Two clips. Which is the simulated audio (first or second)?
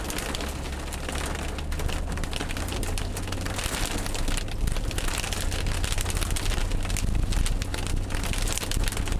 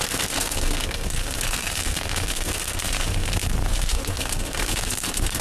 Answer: second